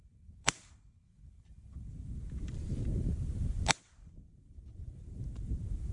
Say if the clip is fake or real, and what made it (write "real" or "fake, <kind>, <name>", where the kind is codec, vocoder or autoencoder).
fake, vocoder, BigVGAN v2